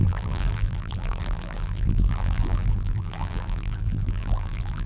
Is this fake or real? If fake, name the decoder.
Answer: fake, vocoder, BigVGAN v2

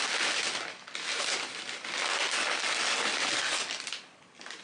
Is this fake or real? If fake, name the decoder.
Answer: real